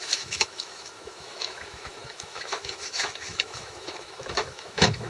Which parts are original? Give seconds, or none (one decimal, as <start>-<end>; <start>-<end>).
none